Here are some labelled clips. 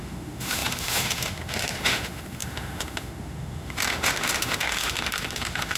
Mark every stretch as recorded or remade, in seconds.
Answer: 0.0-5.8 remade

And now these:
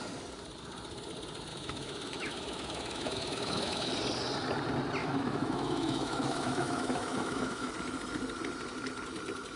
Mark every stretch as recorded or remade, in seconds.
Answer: 0.0-1.5 recorded; 1.5-3.9 remade; 3.9-5.0 recorded; 5.0-7.7 remade; 7.7-9.6 recorded

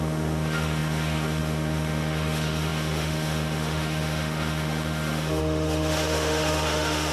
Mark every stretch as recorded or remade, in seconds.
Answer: 0.0-7.1 remade

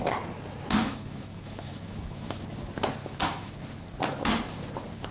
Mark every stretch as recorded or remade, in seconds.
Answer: 0.0-0.8 recorded; 0.8-2.4 remade; 2.4-3.0 recorded; 3.0-3.5 remade; 3.5-5.1 recorded

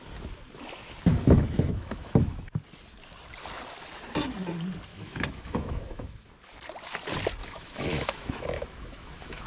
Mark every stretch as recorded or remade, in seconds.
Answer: 0.0-1.1 recorded; 1.1-2.4 remade; 2.4-4.9 recorded; 4.9-6.3 remade; 6.3-7.4 recorded; 7.4-9.5 remade